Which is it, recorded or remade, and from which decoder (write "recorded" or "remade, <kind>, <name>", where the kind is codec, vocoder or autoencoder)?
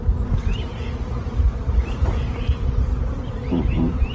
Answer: remade, vocoder, BigVGAN v2